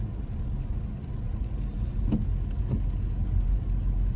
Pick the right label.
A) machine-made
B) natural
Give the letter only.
B